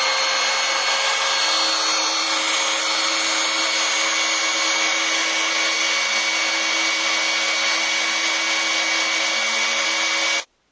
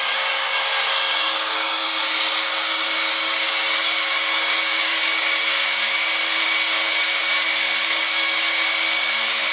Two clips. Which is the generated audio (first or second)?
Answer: second